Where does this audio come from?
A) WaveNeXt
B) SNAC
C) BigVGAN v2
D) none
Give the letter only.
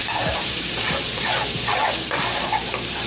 C